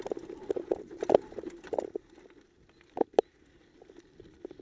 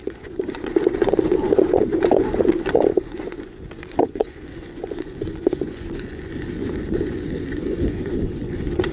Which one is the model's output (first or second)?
second